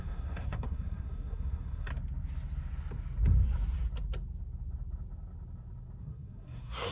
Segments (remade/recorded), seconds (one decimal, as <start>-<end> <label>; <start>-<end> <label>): 0.0-1.9 remade; 1.9-6.0 recorded; 6.0-6.9 remade